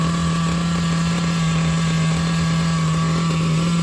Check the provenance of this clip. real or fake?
real